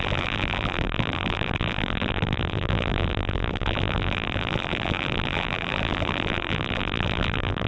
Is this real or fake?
fake